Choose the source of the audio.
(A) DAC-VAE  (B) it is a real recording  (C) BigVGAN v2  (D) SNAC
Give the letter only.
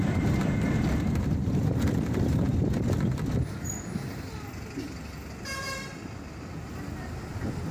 B